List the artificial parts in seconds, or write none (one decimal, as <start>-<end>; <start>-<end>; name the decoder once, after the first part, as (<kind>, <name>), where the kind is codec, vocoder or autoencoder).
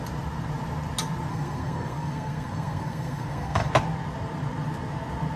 1.3-3.7 (codec, SNAC)